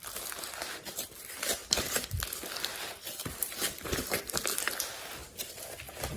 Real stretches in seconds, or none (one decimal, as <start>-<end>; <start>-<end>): 0.0-1.6; 4.2-6.2